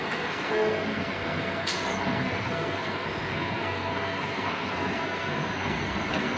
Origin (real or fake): fake